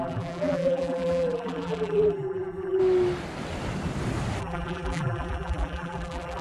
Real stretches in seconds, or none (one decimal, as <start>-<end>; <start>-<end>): 2.8-4.4